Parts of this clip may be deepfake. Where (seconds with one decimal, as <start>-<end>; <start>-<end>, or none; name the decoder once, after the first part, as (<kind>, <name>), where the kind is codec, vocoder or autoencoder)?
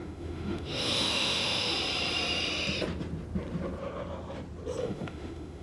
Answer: 0.0-1.7 (autoencoder, DAC-VAE); 4.8-5.6